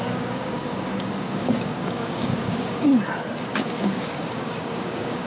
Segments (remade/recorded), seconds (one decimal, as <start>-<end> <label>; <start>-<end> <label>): 0.0-2.9 remade; 2.9-3.4 recorded; 3.4-5.3 remade